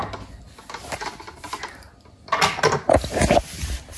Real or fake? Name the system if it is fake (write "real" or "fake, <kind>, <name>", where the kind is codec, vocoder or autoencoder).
real